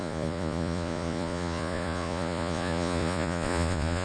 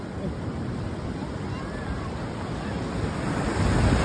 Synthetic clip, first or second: first